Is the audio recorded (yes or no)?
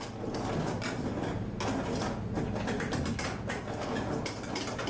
yes